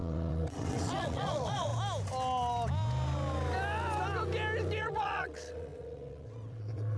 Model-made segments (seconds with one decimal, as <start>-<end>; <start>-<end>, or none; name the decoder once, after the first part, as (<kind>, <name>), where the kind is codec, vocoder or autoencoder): 0.0-1.7 (vocoder, WaveNeXt); 4.8-7.0